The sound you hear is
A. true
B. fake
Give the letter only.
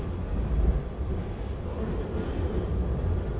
A